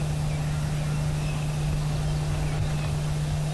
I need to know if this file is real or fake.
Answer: real